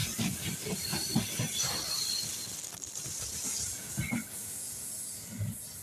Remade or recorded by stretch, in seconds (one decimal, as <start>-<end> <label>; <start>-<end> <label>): 0.0-3.4 remade; 3.4-5.8 recorded